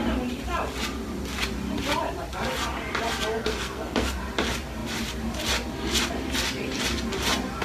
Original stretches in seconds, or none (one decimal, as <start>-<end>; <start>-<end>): 0.0-3.3; 4.2-7.6